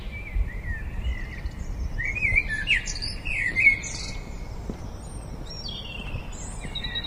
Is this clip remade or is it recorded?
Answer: recorded